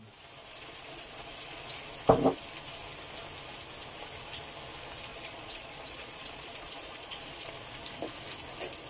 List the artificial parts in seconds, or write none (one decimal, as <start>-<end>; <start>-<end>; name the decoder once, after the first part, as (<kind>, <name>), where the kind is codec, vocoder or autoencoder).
0.4-1.6 (vocoder, Vocos); 5.1-7.5